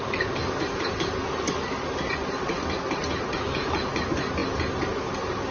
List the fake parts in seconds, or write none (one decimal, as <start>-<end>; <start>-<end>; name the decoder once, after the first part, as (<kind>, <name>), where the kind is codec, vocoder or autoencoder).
none